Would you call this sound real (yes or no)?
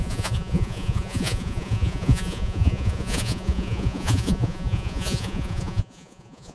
no